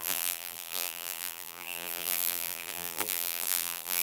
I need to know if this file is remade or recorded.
remade